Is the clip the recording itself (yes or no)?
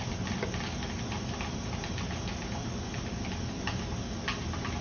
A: yes